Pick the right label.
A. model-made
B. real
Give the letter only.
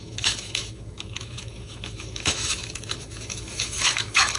A